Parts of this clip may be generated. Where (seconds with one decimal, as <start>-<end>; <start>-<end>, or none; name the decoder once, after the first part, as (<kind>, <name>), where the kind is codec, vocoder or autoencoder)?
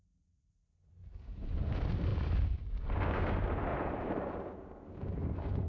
1.0-1.6 (vocoder, BigVGAN v2); 2.1-2.9; 3.7-4.3